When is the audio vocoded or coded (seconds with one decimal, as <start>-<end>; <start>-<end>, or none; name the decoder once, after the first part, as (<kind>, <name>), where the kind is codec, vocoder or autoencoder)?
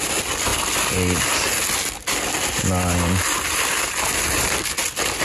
none